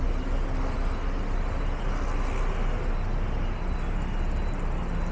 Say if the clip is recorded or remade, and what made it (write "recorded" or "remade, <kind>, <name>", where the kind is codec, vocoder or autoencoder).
recorded